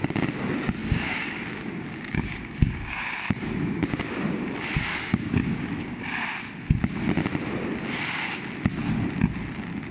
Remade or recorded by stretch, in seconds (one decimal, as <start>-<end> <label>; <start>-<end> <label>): 0.0-0.8 recorded; 0.8-4.0 remade; 4.0-4.9 recorded; 4.9-6.0 remade; 6.0-9.9 recorded